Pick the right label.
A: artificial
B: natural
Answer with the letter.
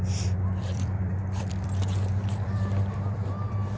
A